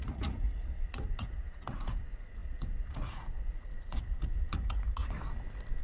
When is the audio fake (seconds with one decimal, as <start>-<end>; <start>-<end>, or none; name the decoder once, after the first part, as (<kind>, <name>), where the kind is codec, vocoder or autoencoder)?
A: 0.0-5.0 (vocoder, Vocos)